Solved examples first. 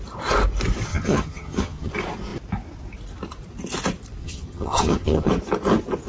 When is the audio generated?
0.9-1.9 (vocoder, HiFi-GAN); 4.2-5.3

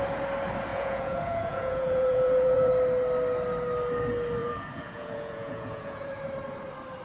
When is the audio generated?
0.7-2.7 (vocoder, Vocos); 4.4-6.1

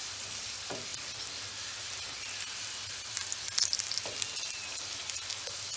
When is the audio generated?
none

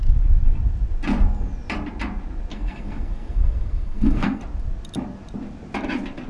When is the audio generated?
2.5-4.4 (codec, SNAC)

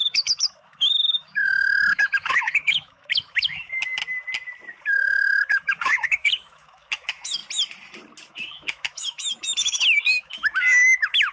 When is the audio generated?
0.0-4.0 (autoencoder, DAC-VAE); 4.8-7.4; 8.3-11.3